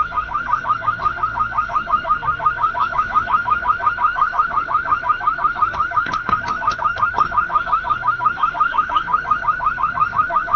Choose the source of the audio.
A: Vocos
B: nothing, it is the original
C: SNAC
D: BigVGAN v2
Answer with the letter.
C